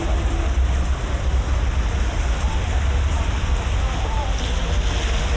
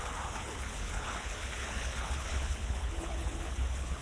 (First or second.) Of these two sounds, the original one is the first